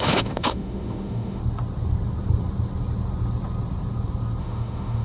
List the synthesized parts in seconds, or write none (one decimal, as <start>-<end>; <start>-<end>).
0.0-1.4; 4.4-5.0